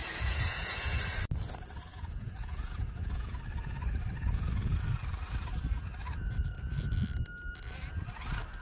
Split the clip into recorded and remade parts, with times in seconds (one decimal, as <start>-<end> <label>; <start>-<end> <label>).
0.0-1.0 remade; 1.0-1.9 recorded; 1.9-3.4 remade; 3.4-8.6 recorded